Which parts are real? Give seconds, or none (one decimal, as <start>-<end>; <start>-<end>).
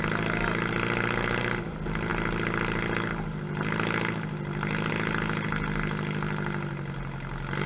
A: 0.0-7.7